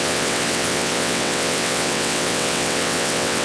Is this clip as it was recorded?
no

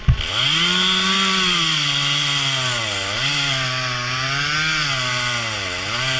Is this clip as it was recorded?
yes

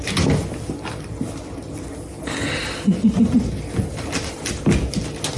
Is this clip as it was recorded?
yes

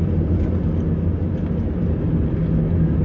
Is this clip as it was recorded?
yes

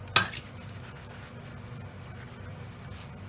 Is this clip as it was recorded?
yes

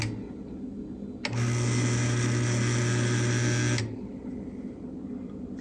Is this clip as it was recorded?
yes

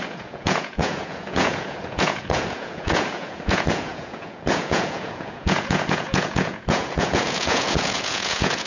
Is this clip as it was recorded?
no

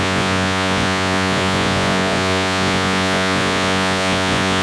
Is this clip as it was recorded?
no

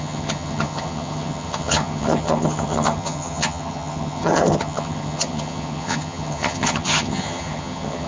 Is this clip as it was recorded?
no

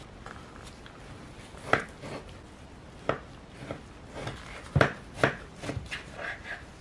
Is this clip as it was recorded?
yes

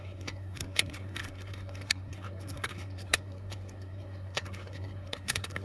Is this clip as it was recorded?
no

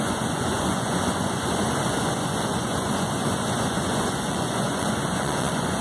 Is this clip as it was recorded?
no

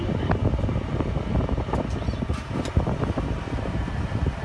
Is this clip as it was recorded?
yes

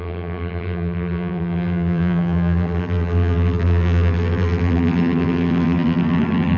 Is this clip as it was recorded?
no